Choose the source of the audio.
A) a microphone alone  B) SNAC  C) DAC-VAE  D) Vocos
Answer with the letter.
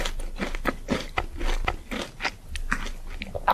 A